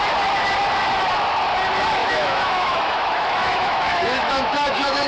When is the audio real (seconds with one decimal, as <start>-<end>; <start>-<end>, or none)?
0.0-2.0